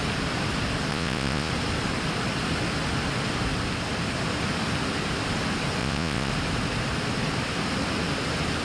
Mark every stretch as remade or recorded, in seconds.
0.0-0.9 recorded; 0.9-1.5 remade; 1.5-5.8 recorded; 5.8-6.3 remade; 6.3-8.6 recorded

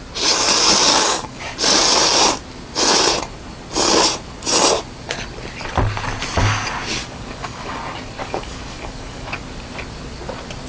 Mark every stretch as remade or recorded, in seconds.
0.0-0.9 recorded; 0.9-1.4 remade; 1.4-7.0 recorded; 7.0-7.8 remade; 7.8-8.2 recorded; 8.2-9.4 remade; 9.4-10.7 recorded

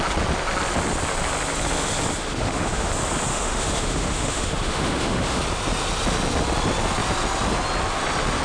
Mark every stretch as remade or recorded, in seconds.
0.0-2.2 recorded; 2.2-2.9 remade; 2.9-3.3 recorded; 3.3-5.4 remade; 5.4-8.4 recorded

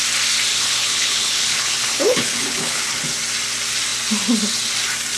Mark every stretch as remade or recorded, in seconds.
0.0-0.5 recorded; 0.5-2.9 remade; 2.9-5.2 recorded

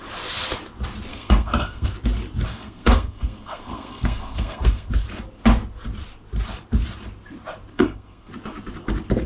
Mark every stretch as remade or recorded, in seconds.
0.0-1.1 recorded; 1.1-1.9 remade; 1.9-2.5 recorded; 2.5-4.9 remade; 4.9-7.7 recorded; 7.7-8.3 remade; 8.3-9.3 recorded

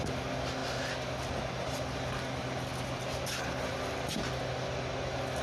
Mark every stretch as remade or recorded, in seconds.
0.0-5.4 recorded

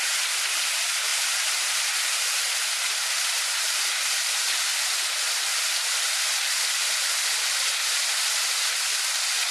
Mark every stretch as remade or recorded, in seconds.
0.0-9.5 recorded